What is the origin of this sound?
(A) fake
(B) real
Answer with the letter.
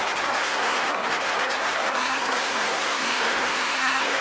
A